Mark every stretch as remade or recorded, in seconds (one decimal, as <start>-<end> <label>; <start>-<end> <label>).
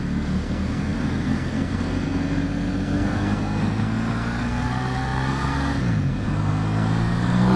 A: 0.0-7.6 remade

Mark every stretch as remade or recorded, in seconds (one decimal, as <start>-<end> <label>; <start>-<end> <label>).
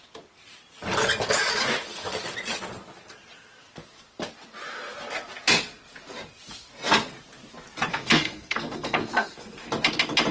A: 0.0-7.9 recorded; 7.9-9.7 remade; 9.7-10.3 recorded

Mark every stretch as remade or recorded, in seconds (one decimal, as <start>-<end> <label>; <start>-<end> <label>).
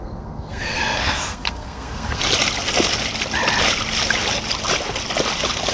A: 0.0-2.2 remade; 2.2-5.7 recorded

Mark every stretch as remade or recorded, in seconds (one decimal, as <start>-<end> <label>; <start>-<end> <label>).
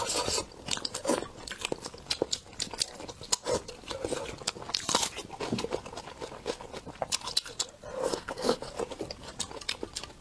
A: 0.0-8.0 recorded; 8.0-8.7 remade; 8.7-10.2 recorded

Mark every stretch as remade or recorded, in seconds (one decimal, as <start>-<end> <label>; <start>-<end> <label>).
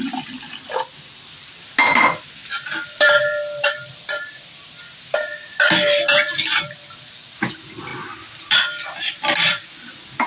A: 0.0-10.3 recorded